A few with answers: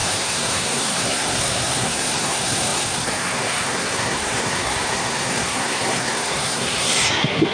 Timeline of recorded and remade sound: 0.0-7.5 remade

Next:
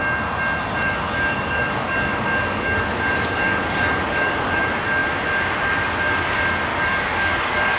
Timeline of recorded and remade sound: 0.0-0.8 recorded; 0.8-4.6 remade; 4.6-6.7 recorded; 6.7-7.8 remade

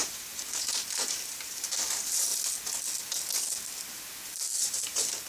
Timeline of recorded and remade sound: 0.0-2.3 remade; 2.3-4.6 recorded; 4.6-5.3 remade